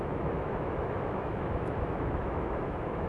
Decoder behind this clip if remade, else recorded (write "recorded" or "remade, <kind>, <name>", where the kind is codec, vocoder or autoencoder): remade, autoencoder, DAC-VAE